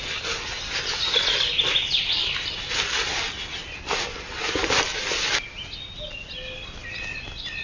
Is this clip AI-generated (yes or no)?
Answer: no